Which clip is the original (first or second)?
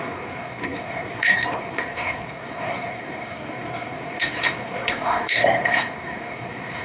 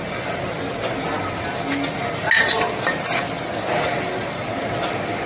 second